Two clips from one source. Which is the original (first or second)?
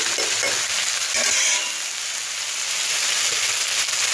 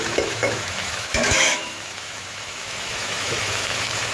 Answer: first